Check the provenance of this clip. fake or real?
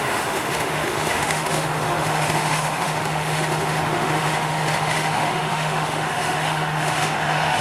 fake